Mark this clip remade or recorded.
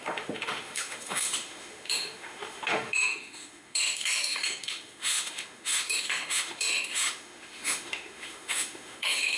remade